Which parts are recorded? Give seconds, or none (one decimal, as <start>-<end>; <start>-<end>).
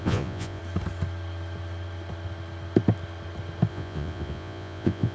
0.6-3.7